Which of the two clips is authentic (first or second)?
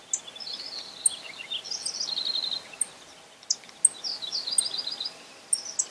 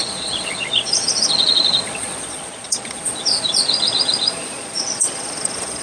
first